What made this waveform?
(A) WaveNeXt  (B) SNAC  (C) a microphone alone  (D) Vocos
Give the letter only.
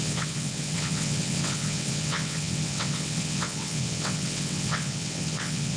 A